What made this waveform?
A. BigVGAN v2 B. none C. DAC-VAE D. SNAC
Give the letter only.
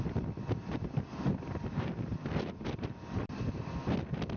B